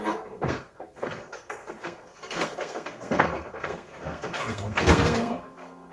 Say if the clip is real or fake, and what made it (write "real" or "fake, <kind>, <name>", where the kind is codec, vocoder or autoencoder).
fake, codec, SNAC